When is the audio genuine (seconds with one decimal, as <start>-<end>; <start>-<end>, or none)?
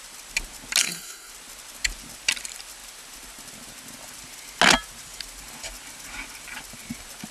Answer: 0.0-0.8; 1.3-7.3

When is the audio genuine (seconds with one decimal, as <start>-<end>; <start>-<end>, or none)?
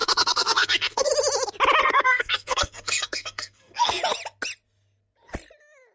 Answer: 1.1-1.8; 4.0-5.9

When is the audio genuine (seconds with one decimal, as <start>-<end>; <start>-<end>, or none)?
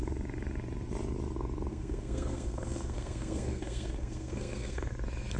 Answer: 0.0-1.7; 4.9-5.4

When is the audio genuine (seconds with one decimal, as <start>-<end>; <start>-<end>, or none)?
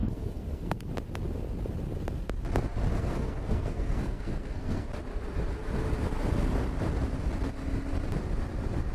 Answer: 0.9-2.9; 4.9-8.9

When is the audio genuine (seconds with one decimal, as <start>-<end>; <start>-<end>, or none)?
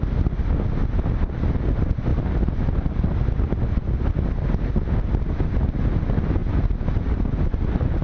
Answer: 0.0-8.0